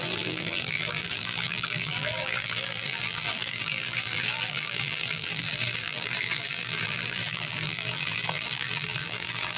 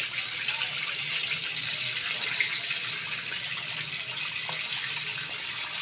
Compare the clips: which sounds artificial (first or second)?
first